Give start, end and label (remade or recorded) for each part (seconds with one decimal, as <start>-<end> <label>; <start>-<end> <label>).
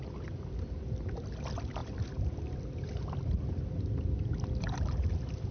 0.0-5.5 recorded